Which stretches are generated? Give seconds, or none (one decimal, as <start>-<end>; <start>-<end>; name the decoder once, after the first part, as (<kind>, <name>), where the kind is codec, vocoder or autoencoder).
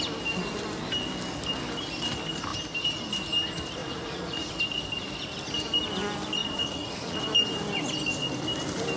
3.8-4.6 (vocoder, Vocos); 6.4-7.2